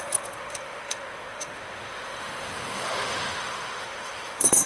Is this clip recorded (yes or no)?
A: no